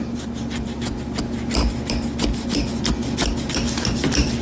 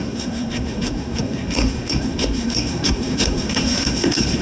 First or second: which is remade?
second